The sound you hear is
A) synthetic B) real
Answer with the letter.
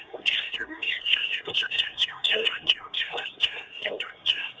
A